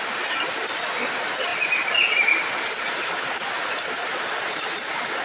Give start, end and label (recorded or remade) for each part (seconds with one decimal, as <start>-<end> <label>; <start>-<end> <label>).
0.0-5.2 recorded